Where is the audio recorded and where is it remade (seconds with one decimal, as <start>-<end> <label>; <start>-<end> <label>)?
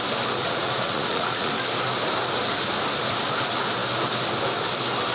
0.0-0.4 recorded; 0.4-1.5 remade; 1.5-5.1 recorded